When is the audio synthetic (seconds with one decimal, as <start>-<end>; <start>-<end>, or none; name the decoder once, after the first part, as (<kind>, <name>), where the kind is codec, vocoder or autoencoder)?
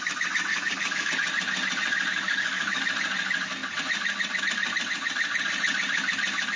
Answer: 0.5-1.1 (codec, DAC); 2.1-2.8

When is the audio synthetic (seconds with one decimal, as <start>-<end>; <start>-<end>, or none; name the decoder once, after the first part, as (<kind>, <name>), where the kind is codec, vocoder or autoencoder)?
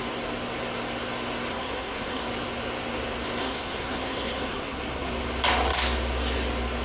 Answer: 1.5-2.3 (codec, SNAC); 3.4-5.1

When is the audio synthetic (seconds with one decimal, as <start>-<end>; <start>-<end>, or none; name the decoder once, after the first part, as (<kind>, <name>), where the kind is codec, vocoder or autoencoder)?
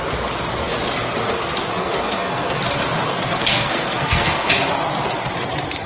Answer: 1.8-2.6 (codec, SNAC); 3.3-4.5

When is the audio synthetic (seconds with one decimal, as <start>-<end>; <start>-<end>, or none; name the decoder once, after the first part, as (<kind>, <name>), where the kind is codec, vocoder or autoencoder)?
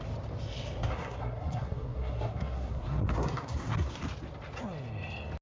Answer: 0.9-4.0 (codec, SNAC)